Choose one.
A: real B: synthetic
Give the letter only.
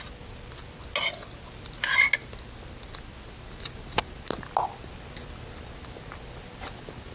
A